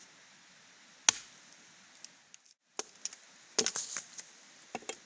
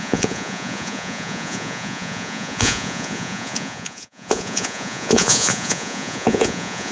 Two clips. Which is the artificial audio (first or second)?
second